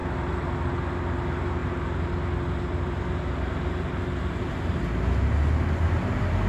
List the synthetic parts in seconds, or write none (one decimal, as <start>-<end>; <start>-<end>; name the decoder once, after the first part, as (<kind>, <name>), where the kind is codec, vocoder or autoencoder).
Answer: none

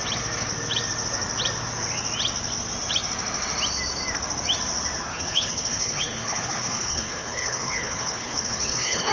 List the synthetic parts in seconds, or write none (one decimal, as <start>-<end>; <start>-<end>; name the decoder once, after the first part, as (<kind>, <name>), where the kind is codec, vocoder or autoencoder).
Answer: 5.1-9.1 (codec, HILCodec)

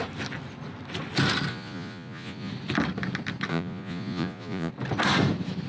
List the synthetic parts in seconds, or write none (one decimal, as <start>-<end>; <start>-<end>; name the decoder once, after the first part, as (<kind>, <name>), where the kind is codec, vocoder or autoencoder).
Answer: 1.5-2.5 (vocoder, Vocos); 3.5-4.7

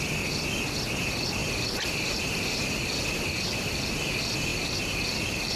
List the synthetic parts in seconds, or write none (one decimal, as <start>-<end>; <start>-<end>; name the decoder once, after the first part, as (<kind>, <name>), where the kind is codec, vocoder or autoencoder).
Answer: 1.4-3.9 (vocoder, BigVGAN v2); 4.5-5.6

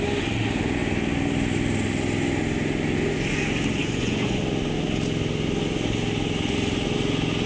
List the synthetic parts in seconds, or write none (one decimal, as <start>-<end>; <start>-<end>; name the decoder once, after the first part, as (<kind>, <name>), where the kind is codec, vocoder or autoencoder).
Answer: 3.8-4.4 (vocoder, Vocos)

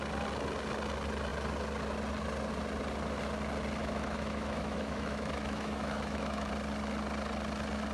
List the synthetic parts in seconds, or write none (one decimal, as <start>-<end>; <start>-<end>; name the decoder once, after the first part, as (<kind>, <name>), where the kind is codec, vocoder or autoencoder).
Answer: 3.8-6.5 (autoencoder, DAC-VAE)